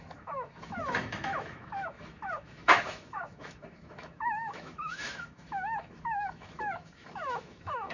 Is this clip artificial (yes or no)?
yes